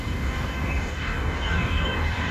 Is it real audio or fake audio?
fake